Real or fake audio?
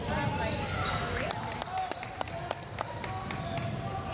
real